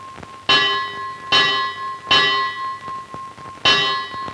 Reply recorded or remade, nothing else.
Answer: recorded